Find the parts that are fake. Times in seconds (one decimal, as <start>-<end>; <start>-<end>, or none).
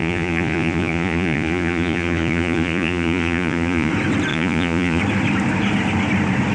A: 0.0-3.9; 4.3-5.0